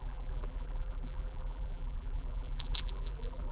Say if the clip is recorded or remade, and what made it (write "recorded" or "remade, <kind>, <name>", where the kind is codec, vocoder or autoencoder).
remade, vocoder, BigVGAN v2